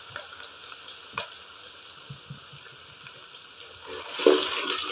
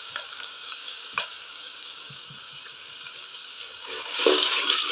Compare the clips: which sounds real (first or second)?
first